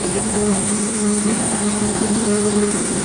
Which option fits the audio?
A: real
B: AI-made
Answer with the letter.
B